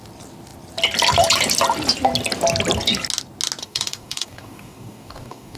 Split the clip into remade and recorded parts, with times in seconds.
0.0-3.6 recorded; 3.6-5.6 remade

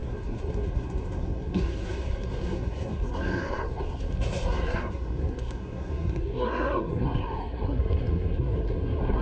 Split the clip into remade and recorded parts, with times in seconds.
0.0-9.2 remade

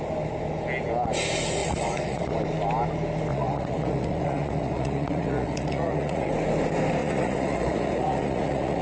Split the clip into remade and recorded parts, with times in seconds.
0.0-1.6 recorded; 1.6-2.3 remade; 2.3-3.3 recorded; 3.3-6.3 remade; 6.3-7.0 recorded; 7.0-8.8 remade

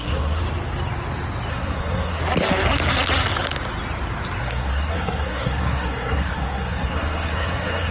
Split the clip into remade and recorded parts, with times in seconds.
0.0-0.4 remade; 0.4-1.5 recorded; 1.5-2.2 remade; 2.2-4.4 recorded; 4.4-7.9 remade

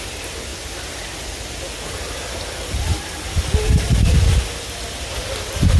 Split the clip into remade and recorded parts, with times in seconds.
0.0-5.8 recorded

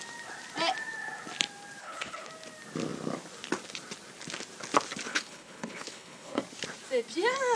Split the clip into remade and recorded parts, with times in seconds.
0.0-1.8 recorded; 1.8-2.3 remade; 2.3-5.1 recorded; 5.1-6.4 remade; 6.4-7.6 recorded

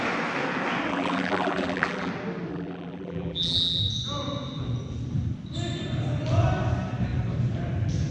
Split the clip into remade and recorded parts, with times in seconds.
0.0-0.9 recorded; 0.9-2.1 remade; 2.1-2.5 recorded; 2.5-3.8 remade; 3.8-8.1 recorded

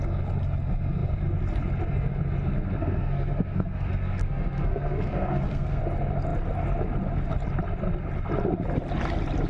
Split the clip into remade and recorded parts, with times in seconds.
0.0-2.8 recorded; 2.8-5.8 remade; 5.8-9.5 recorded